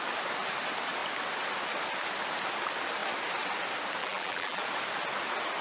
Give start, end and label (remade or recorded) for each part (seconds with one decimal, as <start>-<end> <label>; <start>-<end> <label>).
0.0-4.0 recorded; 4.0-4.6 remade; 4.6-5.6 recorded